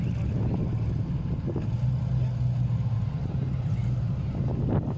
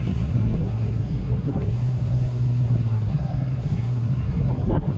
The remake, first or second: second